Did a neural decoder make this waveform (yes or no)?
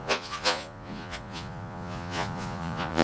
yes